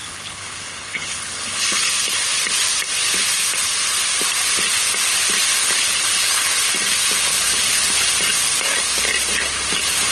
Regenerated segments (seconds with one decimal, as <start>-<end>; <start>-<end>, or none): 0.0-1.9; 5.6-6.5; 7.3-8.1